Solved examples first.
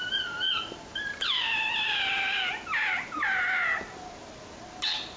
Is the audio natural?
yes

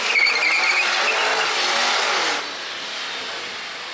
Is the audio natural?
yes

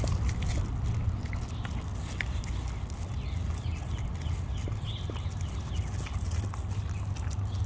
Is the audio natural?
yes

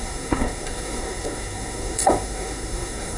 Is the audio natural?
no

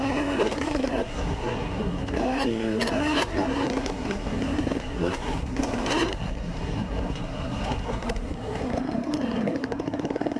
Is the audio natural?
no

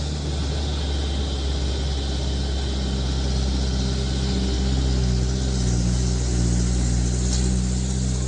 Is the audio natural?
yes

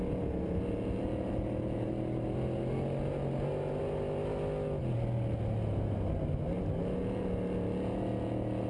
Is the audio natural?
yes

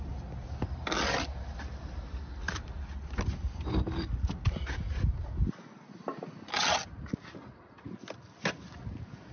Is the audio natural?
yes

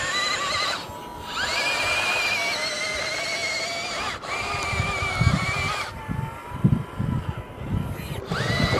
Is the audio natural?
yes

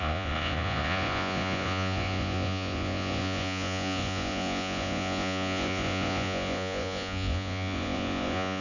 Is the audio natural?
no